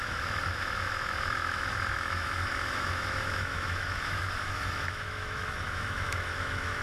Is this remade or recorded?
remade